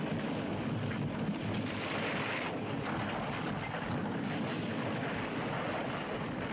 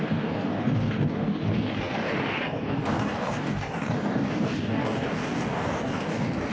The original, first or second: first